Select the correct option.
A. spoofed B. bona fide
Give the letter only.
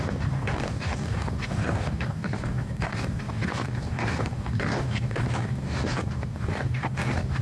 A